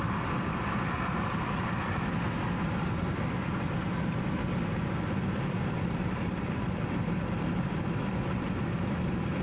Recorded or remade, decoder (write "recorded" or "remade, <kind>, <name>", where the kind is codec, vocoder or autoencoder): recorded